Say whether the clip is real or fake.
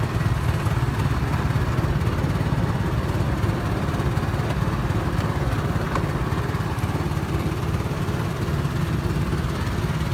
real